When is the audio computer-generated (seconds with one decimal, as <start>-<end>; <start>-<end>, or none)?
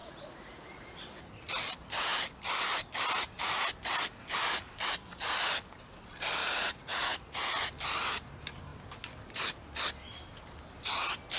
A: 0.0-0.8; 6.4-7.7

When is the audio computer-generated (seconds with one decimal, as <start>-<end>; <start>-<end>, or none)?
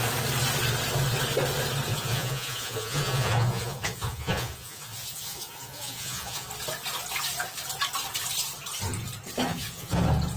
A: 1.9-6.5; 9.5-10.0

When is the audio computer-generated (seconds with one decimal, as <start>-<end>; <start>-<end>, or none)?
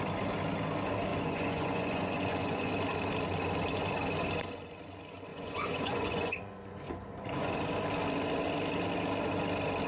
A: 1.1-2.7; 5.3-7.5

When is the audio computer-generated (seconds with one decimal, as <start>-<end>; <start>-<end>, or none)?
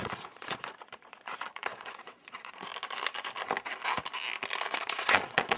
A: 0.0-2.7; 4.8-5.6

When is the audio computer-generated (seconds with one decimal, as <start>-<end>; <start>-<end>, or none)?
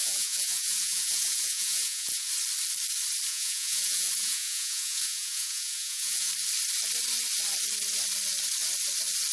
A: 0.0-2.3; 3.3-6.3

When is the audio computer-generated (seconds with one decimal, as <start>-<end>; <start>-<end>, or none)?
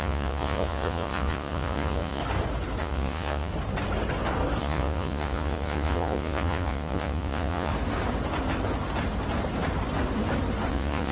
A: 0.0-2.2; 2.8-3.5; 4.6-7.7; 10.7-11.1